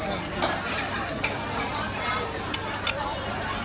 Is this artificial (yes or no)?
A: no